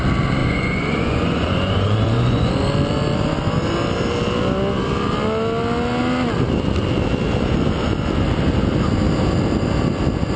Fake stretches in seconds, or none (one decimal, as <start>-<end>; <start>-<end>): 0.4-2.5